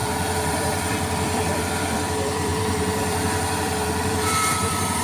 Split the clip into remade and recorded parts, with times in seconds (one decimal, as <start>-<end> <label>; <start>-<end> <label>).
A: 0.0-5.0 remade